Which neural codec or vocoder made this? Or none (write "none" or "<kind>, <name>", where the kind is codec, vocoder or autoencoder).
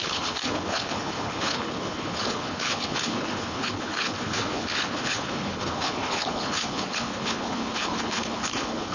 codec, HILCodec